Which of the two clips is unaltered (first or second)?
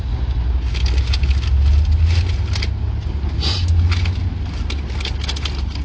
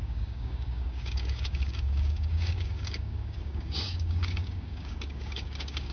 first